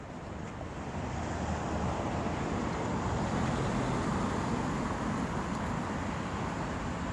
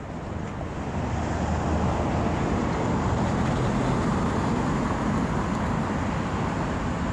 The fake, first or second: first